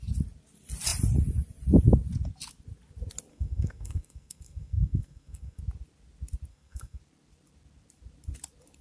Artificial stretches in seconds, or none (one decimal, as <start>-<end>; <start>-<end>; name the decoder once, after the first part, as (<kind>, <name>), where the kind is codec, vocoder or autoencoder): 3.3-5.6 (codec, SNAC); 6.5-7.0